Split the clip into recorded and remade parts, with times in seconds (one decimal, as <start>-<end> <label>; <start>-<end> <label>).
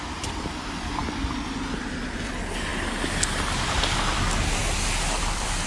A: 0.0-2.7 remade; 2.7-3.7 recorded; 3.7-4.6 remade; 4.6-5.2 recorded; 5.2-5.7 remade